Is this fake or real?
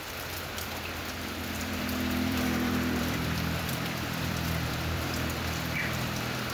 fake